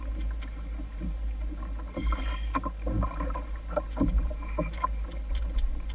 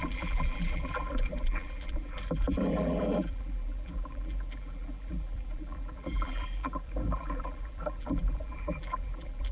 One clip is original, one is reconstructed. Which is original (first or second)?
first